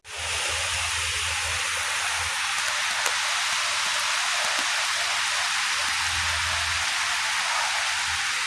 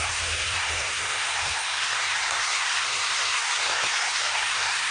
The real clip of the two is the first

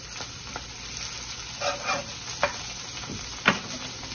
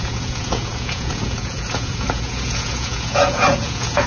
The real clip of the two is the first